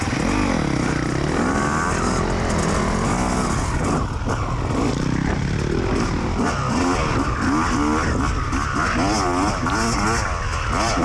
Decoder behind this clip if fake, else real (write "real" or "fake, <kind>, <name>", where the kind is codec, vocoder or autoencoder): real